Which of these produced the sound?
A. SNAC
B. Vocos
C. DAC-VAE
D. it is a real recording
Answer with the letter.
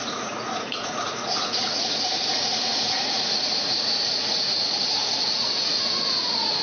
B